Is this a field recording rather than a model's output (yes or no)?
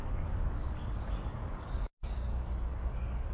no